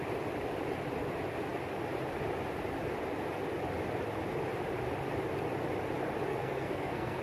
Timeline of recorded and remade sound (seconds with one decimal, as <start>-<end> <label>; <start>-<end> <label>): 0.0-6.3 recorded; 6.3-7.2 remade